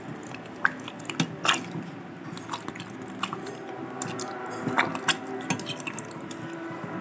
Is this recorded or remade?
recorded